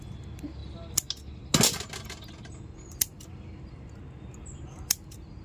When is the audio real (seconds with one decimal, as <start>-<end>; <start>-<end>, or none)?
0.0-5.4